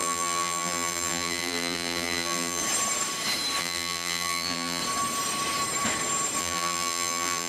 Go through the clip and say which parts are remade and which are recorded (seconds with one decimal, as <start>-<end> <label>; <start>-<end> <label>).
0.0-2.6 remade; 2.6-3.6 recorded; 3.6-4.8 remade; 4.8-6.4 recorded; 6.4-7.5 remade